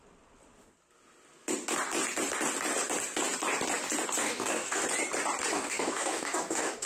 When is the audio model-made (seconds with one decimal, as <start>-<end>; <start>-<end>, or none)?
4.2-4.8; 5.5-6.9